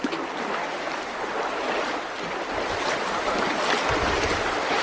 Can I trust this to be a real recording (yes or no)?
yes